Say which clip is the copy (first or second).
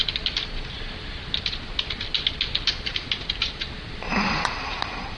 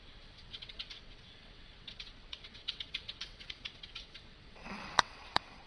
second